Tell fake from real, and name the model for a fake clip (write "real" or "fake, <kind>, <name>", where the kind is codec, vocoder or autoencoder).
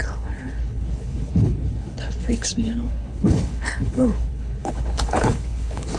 fake, codec, HILCodec